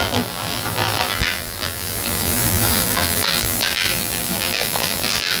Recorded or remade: remade